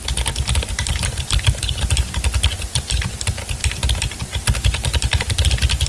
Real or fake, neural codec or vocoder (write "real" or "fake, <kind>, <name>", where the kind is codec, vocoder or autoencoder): real